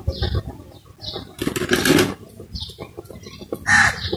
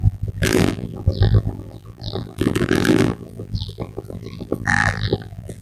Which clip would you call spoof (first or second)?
second